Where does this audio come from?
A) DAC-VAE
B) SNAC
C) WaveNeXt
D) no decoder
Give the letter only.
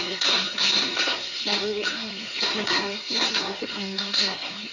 B